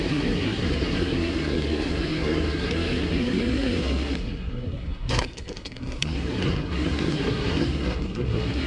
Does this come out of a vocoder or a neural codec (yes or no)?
yes